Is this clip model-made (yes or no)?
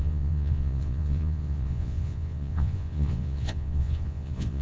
yes